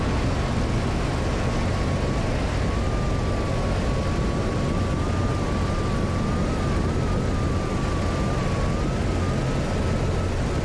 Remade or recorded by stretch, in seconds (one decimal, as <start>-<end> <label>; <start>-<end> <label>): 0.0-10.6 recorded